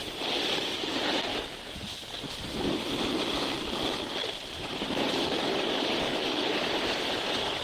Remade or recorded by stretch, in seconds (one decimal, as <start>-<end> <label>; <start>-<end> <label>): 0.0-1.3 remade; 1.3-5.0 recorded; 5.0-7.6 remade